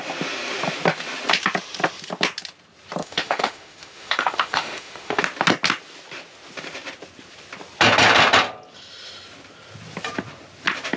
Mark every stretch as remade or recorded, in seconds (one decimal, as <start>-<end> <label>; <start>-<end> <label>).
0.0-3.0 recorded; 3.0-5.2 remade; 5.2-11.0 recorded